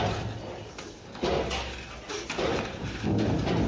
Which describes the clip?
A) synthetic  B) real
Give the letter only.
B